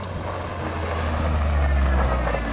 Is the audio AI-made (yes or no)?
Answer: no